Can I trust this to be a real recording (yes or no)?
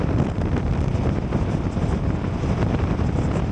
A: yes